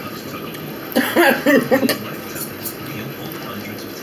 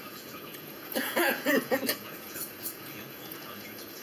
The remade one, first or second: second